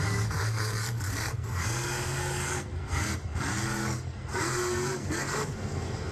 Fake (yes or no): yes